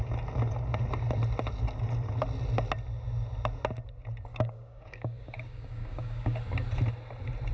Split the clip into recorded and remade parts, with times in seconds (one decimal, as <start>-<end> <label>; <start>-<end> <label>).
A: 0.0-4.3 recorded; 4.3-6.4 remade; 6.4-7.5 recorded

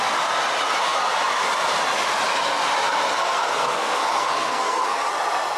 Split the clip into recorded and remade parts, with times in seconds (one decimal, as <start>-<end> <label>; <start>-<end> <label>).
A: 0.0-3.2 recorded; 3.2-5.1 remade; 5.1-5.6 recorded

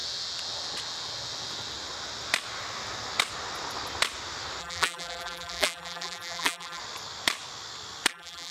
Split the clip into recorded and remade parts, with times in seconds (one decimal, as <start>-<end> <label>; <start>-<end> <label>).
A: 0.0-4.6 recorded; 4.6-6.8 remade; 6.8-8.1 recorded; 8.1-8.5 remade

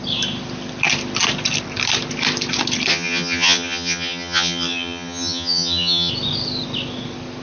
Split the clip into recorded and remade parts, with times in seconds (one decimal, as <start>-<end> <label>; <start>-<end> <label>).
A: 0.0-2.9 recorded; 2.9-6.1 remade; 6.1-7.4 recorded

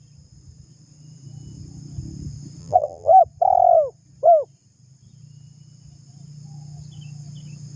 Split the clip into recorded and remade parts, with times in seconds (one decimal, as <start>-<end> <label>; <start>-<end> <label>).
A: 0.0-2.6 recorded; 2.6-3.2 remade; 3.2-7.8 recorded